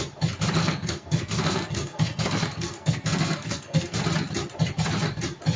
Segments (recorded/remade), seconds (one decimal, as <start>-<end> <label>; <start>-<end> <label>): 0.0-0.6 recorded; 0.6-4.0 remade; 4.0-5.6 recorded